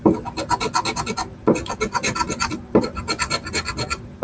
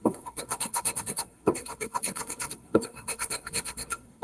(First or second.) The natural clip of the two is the first